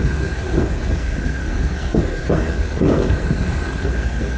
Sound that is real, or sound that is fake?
fake